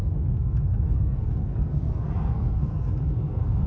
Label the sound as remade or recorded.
remade